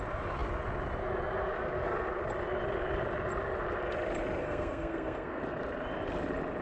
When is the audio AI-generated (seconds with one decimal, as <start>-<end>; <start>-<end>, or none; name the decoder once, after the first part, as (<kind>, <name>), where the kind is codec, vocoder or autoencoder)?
4.4-5.4 (codec, SNAC)